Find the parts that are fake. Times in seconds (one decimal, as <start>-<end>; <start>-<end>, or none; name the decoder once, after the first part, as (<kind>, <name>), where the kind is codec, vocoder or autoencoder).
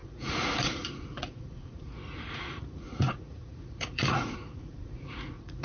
0.0-5.6 (vocoder, Vocos)